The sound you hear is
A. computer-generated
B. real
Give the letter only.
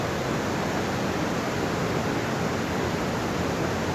B